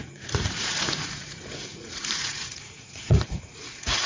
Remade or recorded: remade